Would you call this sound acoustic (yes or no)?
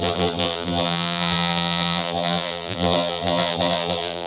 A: no